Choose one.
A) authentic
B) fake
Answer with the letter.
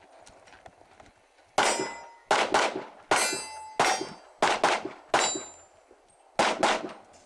A